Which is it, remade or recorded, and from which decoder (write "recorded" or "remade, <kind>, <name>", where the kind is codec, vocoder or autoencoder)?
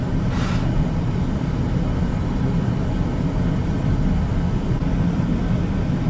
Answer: recorded